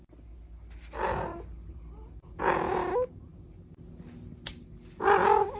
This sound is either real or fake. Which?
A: real